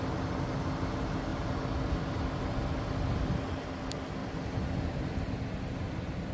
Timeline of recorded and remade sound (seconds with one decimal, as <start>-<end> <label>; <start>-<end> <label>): 0.0-6.3 recorded

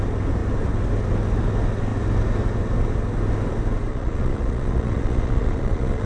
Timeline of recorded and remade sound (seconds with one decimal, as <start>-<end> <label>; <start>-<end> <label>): 0.0-3.9 recorded; 3.9-6.1 remade